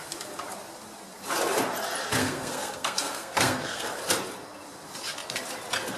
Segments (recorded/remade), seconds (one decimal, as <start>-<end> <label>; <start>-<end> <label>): 0.0-2.2 recorded; 2.2-3.9 remade; 3.9-6.0 recorded